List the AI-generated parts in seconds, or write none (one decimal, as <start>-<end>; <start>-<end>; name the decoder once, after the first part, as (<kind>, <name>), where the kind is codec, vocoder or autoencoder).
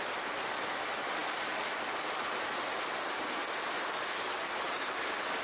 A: 1.2-4.4 (vocoder, BigVGAN v2)